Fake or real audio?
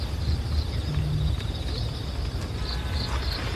real